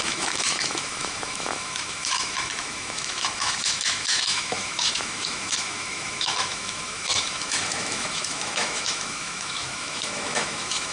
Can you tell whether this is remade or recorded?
remade